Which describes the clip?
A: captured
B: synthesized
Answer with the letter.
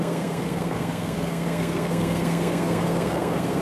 B